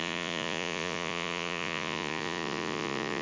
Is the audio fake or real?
fake